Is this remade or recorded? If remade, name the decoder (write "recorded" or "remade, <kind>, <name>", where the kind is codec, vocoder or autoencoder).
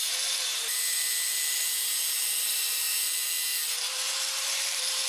remade, vocoder, BigVGAN v2